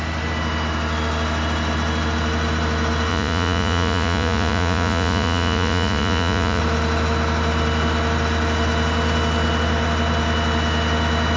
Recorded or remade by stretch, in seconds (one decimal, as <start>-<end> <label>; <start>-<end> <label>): 0.0-3.1 recorded; 3.1-6.6 remade; 6.6-11.4 recorded